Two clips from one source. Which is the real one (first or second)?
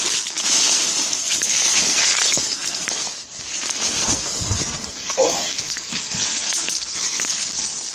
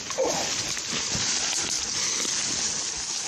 second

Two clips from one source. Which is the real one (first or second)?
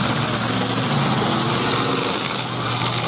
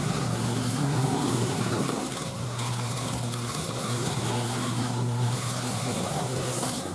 first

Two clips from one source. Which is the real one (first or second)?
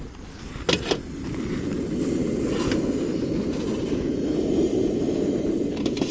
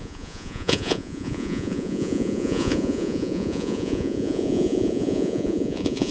first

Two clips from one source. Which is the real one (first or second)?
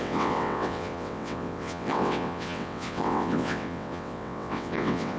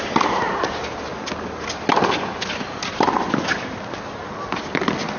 second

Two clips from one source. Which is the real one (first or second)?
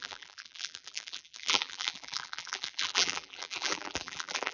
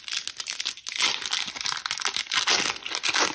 second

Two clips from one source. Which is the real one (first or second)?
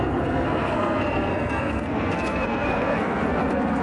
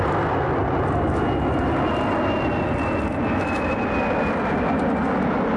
second